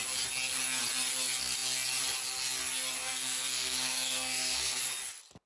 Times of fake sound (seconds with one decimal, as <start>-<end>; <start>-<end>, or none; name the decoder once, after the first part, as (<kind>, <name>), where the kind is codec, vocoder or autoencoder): 3.0-4.8 (codec, SNAC)